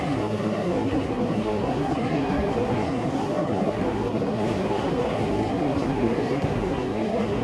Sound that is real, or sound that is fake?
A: fake